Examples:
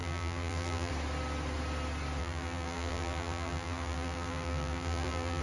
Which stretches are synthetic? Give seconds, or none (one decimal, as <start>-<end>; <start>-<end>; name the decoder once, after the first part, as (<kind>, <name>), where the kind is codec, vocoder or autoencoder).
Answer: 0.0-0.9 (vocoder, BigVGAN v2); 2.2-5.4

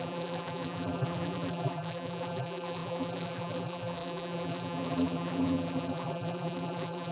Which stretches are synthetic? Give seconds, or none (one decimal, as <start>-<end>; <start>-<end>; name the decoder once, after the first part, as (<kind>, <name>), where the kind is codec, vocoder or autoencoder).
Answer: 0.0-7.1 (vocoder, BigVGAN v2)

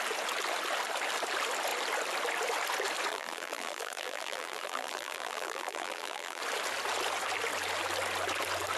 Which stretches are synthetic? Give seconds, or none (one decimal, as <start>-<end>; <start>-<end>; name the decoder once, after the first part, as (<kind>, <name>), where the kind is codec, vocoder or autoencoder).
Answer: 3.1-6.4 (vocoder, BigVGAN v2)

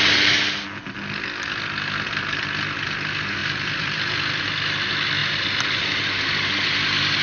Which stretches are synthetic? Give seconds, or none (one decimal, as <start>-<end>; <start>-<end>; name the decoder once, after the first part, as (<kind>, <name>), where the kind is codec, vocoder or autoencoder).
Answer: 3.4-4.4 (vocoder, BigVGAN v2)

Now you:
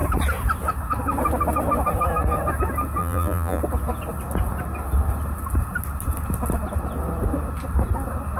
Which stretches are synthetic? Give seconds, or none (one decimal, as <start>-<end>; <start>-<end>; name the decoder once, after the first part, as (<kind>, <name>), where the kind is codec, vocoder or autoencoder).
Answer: 3.0-3.6 (vocoder, BigVGAN v2)

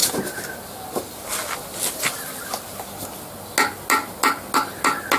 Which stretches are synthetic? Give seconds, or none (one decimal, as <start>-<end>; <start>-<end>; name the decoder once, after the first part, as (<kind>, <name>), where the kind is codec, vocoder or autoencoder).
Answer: none

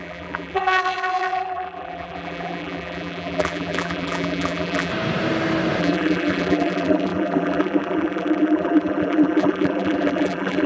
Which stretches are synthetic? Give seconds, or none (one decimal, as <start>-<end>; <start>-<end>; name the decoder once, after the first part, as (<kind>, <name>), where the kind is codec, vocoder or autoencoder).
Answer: 0.0-4.9 (vocoder, BigVGAN v2); 5.8-10.7

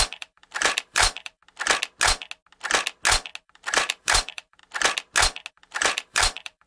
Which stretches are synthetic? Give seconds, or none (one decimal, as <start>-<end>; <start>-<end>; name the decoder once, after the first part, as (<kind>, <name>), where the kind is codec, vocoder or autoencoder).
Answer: 0.0-1.4 (vocoder, BigVGAN v2); 3.4-4.6; 5.5-6.7